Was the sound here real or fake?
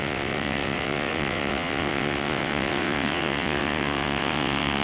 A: fake